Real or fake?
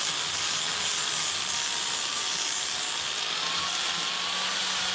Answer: real